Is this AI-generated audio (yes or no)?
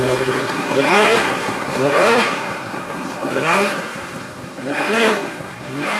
yes